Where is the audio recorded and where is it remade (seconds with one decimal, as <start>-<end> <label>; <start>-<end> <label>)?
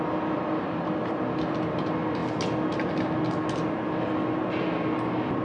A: 0.0-5.4 recorded